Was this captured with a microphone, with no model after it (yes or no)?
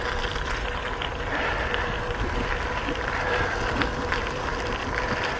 yes